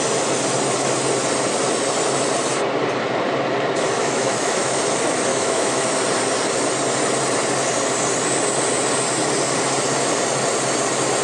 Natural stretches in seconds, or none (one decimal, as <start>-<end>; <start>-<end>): 0.0-4.0; 4.8-5.3; 6.0-11.2